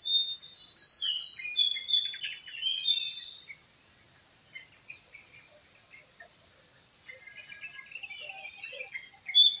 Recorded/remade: recorded